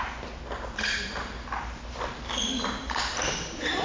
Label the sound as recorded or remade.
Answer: recorded